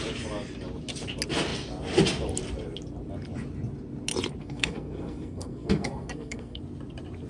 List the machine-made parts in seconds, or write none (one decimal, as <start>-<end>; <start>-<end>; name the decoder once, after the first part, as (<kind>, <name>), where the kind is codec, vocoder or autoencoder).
4.4-6.6 (codec, SNAC)